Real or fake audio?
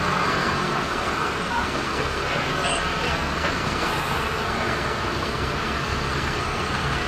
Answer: fake